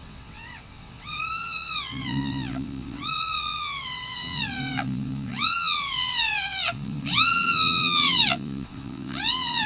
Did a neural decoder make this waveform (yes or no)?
yes